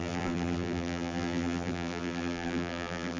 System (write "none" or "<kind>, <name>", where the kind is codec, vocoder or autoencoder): vocoder, BigVGAN v2